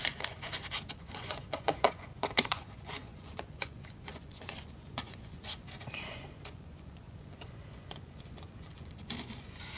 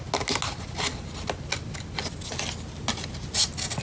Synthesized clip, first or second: first